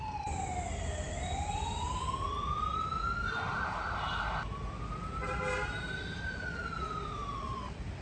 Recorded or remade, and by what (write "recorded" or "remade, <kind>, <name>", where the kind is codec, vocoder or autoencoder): recorded